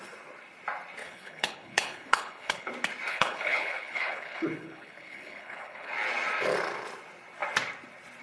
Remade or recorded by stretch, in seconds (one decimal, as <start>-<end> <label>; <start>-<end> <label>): 0.0-1.0 recorded; 1.0-2.7 remade; 2.7-3.1 recorded; 3.1-5.9 remade; 5.9-8.2 recorded